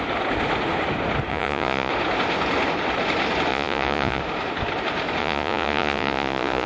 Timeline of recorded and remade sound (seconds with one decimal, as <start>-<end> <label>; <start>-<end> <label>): 0.0-1.3 recorded; 1.3-1.9 remade; 1.9-3.5 recorded; 3.5-4.2 remade; 4.2-5.2 recorded; 5.2-6.7 remade

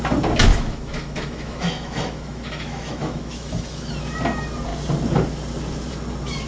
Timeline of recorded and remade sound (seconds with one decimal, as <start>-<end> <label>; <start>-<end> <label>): 0.0-0.5 recorded; 0.5-3.9 remade; 3.9-6.5 recorded